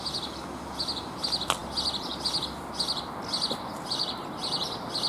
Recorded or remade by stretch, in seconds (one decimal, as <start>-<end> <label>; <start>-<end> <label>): 0.0-5.1 recorded